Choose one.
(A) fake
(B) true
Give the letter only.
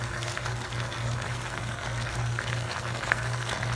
A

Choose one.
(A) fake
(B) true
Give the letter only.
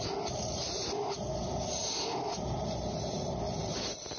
B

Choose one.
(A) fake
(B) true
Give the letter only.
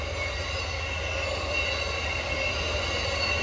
B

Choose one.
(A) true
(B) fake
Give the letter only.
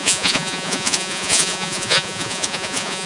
B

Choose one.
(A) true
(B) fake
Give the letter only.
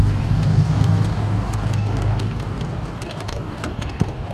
B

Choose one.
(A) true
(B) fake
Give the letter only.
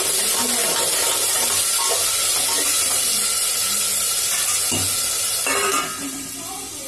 A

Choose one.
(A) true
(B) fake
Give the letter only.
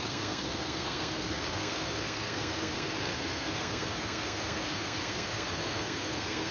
B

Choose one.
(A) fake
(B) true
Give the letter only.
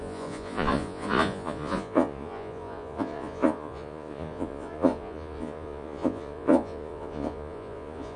A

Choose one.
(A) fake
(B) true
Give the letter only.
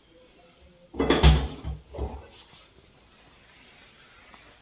B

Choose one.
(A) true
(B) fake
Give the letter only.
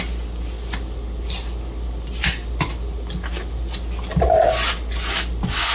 A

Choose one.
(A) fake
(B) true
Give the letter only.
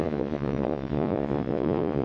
A